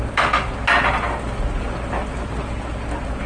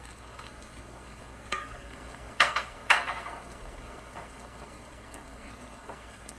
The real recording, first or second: first